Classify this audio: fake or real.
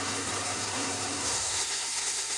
fake